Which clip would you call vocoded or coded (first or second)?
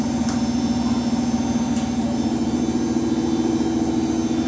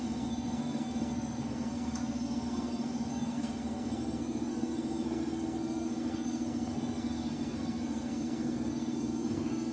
second